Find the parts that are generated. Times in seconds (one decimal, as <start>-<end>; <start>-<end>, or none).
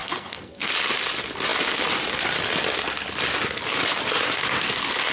0.0-0.7